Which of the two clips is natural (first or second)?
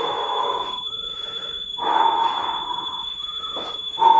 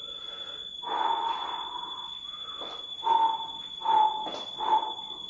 second